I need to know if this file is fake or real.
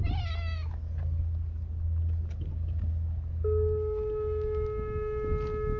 real